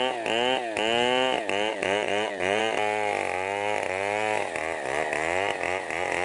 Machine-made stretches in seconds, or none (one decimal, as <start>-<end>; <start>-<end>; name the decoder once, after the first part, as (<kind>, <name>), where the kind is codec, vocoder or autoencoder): 1.7-2.6 (vocoder, Vocos)